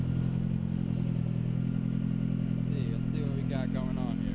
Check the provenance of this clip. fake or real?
real